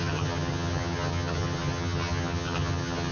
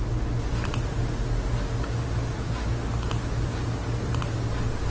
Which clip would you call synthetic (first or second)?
first